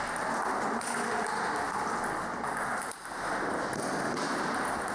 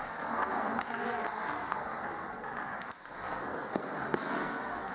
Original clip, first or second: first